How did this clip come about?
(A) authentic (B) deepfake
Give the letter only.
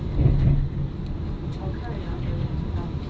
A